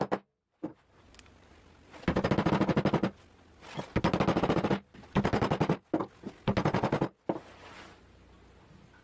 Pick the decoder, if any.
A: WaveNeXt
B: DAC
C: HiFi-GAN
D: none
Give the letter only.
D